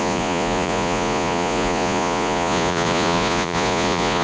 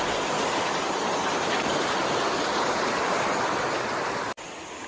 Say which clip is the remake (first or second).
first